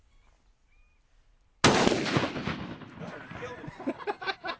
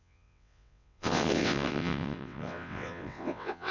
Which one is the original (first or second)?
first